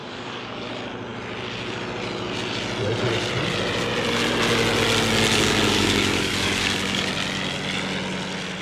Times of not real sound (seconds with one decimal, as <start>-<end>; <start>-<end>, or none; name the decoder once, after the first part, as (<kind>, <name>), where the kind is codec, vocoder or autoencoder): 0.0-0.7 (codec, DAC); 5.3-7.1